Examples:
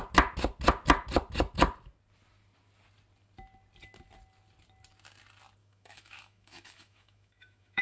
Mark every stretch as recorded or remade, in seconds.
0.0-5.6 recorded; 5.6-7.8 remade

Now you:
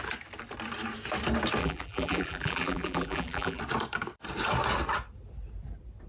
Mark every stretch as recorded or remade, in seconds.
0.0-1.6 recorded; 1.6-3.6 remade; 3.6-6.1 recorded